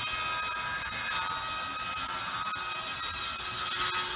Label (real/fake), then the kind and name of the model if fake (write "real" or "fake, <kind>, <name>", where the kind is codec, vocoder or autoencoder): real